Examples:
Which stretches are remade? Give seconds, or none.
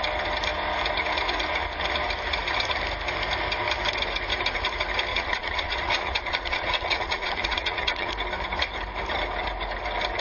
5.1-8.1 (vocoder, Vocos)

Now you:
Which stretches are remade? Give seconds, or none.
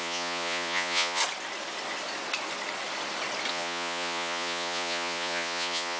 0.0-1.2 (vocoder, Vocos); 3.5-6.0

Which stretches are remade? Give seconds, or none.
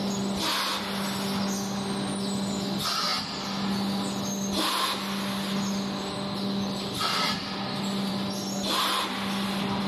none